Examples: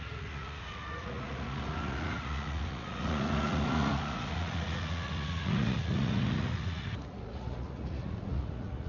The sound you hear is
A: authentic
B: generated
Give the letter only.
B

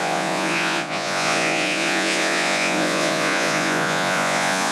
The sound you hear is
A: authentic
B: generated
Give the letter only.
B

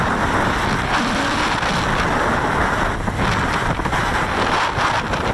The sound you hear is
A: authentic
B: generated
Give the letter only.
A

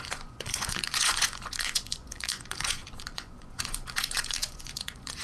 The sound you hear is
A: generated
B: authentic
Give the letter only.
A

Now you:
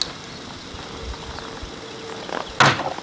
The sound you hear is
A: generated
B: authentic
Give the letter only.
B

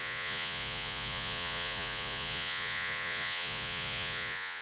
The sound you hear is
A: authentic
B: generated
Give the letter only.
B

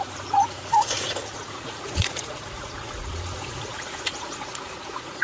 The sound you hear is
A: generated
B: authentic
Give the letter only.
A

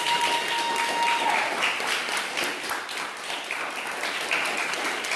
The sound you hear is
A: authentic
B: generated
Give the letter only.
A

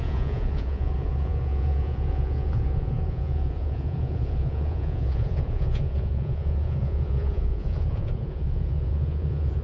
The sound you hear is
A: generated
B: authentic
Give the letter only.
A